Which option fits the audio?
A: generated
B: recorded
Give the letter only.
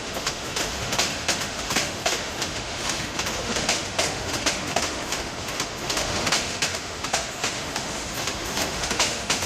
A